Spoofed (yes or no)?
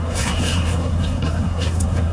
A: yes